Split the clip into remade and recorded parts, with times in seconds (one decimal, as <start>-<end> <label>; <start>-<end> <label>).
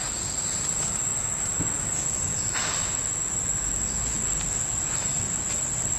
0.0-6.0 recorded